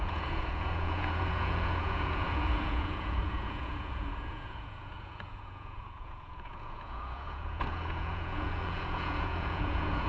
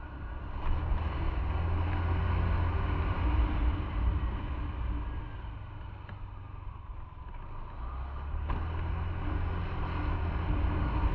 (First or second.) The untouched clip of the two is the second